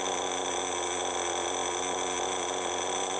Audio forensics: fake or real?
real